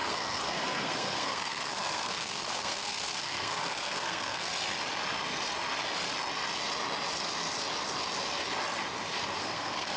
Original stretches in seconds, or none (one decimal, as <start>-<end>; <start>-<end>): 4.5-9.4